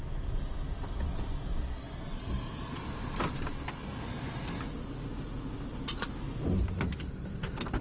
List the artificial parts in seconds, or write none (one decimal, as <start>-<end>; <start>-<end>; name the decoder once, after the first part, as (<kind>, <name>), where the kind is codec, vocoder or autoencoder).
none